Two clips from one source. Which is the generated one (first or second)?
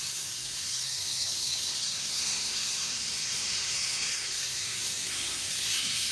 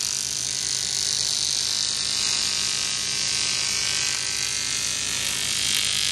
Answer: first